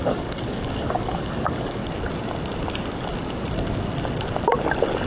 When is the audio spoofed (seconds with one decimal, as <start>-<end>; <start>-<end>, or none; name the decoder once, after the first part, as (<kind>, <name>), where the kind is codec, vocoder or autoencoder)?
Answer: 0.0-1.8 (codec, DAC)